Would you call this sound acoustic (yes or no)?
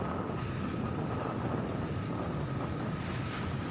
yes